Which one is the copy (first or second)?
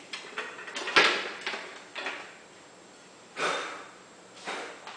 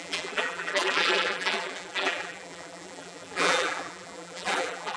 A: second